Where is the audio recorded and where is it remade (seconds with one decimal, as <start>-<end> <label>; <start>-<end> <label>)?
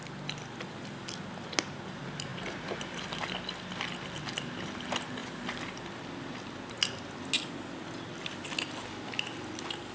0.0-5.2 recorded; 5.2-6.5 remade; 6.5-9.9 recorded